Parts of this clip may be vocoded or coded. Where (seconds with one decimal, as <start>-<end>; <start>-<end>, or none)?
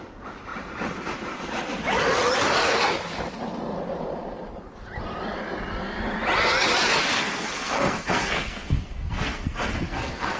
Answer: 7.1-10.4